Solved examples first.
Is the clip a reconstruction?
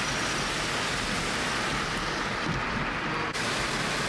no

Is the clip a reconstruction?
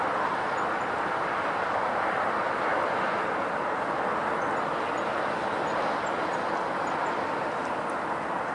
no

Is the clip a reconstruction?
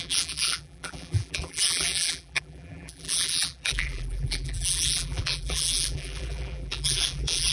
yes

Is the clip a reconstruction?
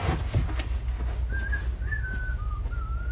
no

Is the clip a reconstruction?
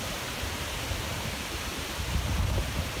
yes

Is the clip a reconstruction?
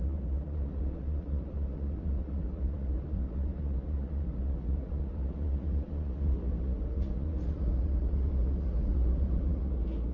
yes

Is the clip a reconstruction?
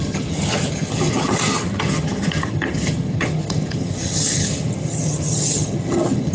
yes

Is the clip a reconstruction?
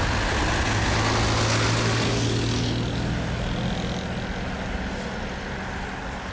no